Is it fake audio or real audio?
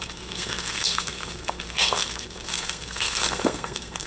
fake